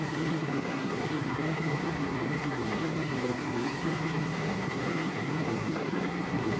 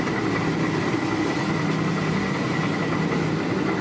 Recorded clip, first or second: second